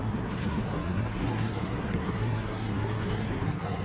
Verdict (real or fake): fake